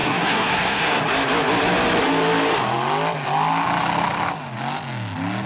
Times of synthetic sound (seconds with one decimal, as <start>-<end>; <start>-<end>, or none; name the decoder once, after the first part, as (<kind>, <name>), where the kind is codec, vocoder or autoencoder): 0.0-1.0 (codec, SNAC)